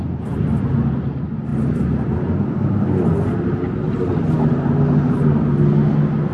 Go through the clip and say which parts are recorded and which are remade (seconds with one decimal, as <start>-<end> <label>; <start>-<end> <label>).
0.0-6.3 recorded